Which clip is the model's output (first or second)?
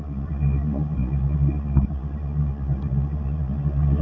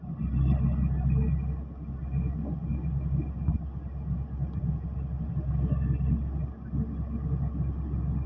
first